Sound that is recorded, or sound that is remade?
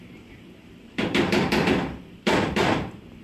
remade